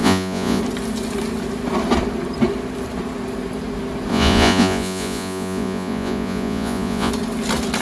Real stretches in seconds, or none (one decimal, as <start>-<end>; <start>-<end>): 0.6-4.1; 7.1-7.8